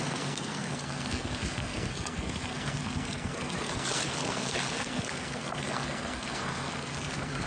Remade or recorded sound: remade